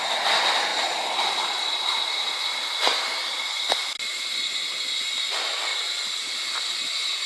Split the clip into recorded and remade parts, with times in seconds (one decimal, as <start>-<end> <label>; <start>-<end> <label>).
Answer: 0.0-7.3 recorded